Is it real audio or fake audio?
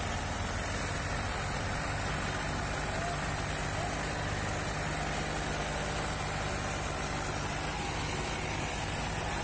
real